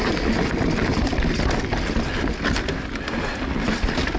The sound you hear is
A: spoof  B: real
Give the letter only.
B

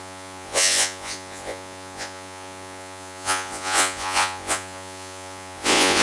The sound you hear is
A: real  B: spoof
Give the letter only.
B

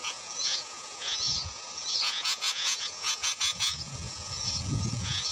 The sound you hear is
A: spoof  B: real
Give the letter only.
A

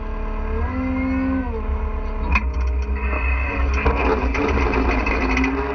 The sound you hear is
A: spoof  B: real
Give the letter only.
B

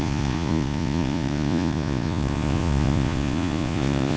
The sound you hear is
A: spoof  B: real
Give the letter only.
A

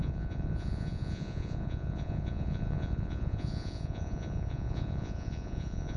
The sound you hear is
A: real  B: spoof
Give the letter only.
B